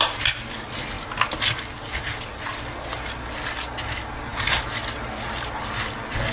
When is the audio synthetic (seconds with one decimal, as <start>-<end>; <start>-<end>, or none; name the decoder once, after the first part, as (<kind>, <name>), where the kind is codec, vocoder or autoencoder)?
none

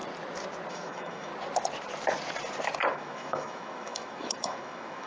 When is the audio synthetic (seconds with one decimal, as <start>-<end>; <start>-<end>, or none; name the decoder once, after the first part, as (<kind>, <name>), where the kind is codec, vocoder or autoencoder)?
0.7-1.3 (autoencoder, DAC-VAE); 2.9-5.1